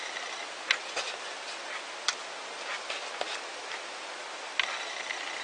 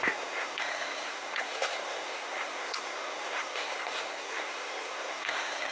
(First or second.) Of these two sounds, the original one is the first